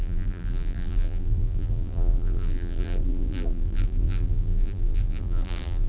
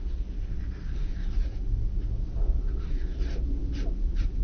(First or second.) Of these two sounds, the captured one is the second